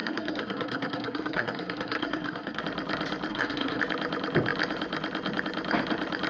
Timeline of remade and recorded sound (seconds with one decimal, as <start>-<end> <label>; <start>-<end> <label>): 0.0-2.6 remade; 2.6-3.3 recorded; 3.3-3.8 remade; 3.8-6.3 recorded